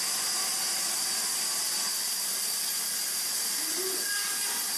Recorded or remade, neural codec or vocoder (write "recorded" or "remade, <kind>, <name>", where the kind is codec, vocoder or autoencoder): recorded